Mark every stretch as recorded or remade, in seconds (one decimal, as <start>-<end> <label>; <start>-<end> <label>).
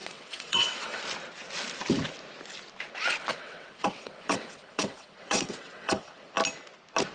0.0-1.0 remade; 1.0-3.3 recorded; 3.3-6.3 remade; 6.3-7.1 recorded